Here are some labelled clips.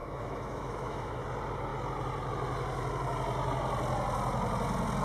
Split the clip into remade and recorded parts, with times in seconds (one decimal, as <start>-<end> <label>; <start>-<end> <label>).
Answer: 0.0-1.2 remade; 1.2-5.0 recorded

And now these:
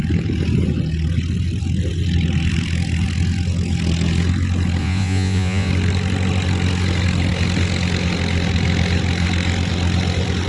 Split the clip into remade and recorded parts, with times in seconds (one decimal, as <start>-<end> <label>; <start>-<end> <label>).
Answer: 0.0-4.8 recorded; 4.8-5.7 remade; 5.7-10.5 recorded

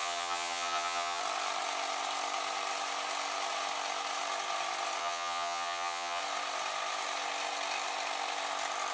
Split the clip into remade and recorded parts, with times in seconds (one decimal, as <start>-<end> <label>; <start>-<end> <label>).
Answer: 0.0-1.2 remade; 1.2-5.0 recorded; 5.0-6.2 remade; 6.2-8.9 recorded

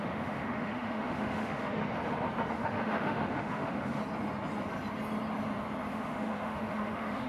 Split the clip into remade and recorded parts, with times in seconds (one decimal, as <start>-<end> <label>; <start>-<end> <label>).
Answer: 0.0-1.8 remade; 1.8-2.5 recorded; 2.5-4.0 remade; 4.0-5.9 recorded; 5.9-7.3 remade

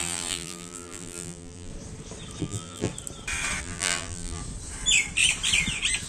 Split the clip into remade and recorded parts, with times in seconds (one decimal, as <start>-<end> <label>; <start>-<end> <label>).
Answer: 0.0-1.7 remade; 1.7-2.4 recorded; 2.4-2.9 remade; 2.9-3.6 recorded; 3.6-4.4 remade; 4.4-6.1 recorded

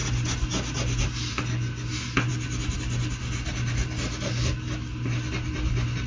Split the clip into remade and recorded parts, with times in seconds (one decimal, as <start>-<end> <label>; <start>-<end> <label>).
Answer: 0.0-6.1 recorded

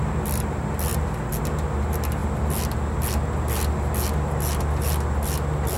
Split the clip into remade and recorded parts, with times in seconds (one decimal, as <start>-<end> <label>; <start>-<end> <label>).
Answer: 0.0-5.8 recorded